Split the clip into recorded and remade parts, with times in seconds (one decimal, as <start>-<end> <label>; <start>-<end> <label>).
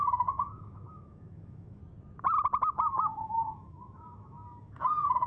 0.0-1.8 remade; 1.8-2.6 recorded; 2.6-5.3 remade